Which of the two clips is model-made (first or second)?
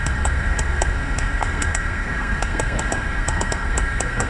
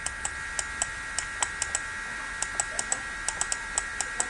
first